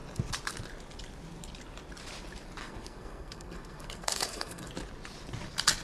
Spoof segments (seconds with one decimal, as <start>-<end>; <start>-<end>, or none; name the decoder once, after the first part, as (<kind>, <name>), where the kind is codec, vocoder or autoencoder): 2.6-4.7 (codec, SNAC)